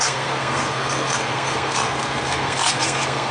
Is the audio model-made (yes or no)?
yes